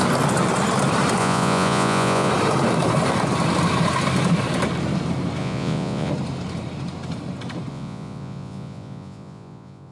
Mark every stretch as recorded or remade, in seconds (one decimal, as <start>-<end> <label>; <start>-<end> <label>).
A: 0.0-1.2 recorded; 1.2-2.3 remade; 2.3-5.4 recorded; 5.4-6.1 remade; 6.1-7.7 recorded; 7.7-9.9 remade